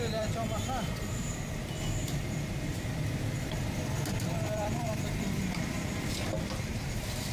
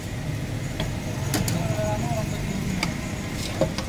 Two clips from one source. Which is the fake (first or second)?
first